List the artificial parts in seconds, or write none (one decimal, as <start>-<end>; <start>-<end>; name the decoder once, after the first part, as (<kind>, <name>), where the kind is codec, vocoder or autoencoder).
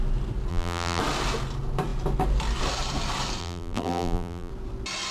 0.5-1.0 (vocoder, BigVGAN v2); 3.4-4.5